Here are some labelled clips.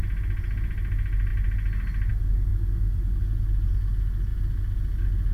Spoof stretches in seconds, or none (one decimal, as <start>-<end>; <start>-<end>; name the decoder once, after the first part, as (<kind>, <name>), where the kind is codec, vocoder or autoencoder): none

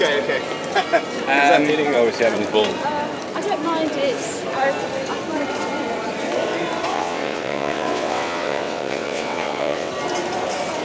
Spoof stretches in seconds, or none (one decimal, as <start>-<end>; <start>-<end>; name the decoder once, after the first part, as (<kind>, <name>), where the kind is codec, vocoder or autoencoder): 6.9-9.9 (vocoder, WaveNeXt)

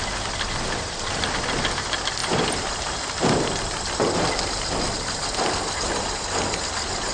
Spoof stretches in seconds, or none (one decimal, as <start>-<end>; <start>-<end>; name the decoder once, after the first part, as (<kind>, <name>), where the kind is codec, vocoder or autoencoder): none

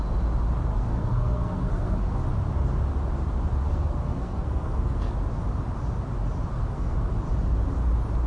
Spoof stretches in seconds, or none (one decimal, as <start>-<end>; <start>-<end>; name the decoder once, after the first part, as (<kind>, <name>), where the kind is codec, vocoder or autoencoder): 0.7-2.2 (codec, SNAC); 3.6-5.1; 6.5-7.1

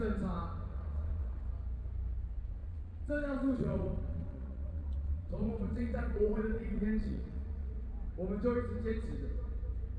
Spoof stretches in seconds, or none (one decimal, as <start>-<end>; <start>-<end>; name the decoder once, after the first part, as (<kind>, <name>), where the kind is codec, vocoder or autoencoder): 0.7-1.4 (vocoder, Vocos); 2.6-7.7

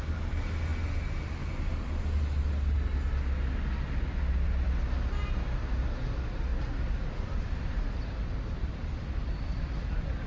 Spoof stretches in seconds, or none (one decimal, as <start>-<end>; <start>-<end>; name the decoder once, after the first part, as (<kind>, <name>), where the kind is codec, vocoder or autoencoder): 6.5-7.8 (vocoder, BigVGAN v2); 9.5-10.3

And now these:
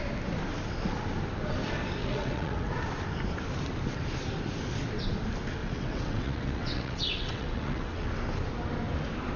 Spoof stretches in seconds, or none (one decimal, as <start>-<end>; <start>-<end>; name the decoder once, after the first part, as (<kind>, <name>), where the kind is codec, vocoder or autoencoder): 2.0-2.7 (vocoder, WaveNeXt); 5.6-8.1

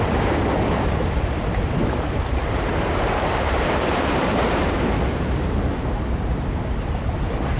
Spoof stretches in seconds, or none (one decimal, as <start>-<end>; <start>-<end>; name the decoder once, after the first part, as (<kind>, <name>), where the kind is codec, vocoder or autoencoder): 1.8-5.6 (vocoder, BigVGAN v2)